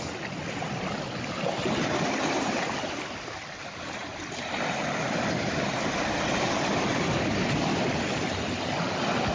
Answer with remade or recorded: recorded